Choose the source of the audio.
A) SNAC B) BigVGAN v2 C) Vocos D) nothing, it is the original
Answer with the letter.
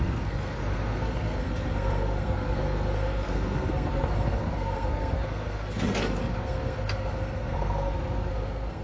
A